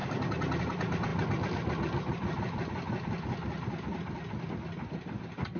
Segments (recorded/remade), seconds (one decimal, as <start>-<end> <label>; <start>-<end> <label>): 0.0-0.6 recorded; 0.6-5.6 remade